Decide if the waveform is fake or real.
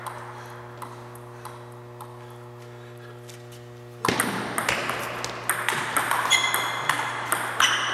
real